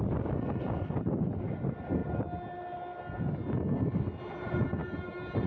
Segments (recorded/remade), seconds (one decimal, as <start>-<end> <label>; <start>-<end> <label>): 0.0-4.8 recorded; 4.8-5.5 remade